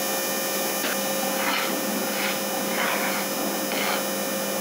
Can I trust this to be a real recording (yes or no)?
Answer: yes